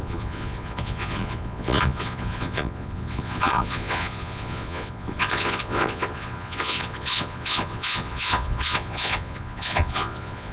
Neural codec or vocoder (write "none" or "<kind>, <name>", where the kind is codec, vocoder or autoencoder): vocoder, Vocos